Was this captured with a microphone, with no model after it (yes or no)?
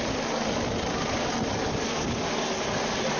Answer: yes